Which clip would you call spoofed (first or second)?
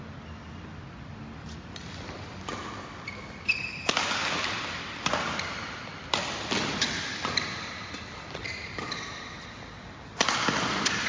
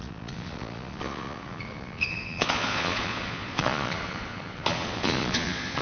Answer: second